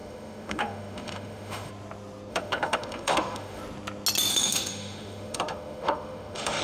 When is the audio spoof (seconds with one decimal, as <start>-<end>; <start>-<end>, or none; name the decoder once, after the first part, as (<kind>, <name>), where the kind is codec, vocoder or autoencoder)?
0.0-1.7 (autoencoder, DAC-VAE); 2.3-3.6; 4.3-6.6